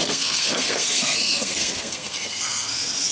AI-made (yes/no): yes